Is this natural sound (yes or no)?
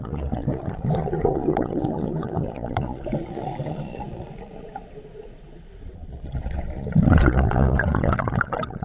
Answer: no